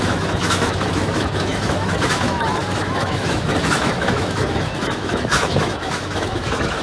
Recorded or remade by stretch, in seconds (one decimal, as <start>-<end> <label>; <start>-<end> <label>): 0.0-6.8 remade